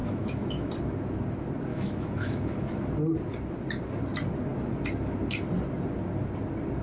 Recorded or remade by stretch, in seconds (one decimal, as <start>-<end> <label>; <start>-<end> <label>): 0.0-0.7 remade; 0.7-1.7 recorded; 1.7-2.9 remade; 2.9-6.8 recorded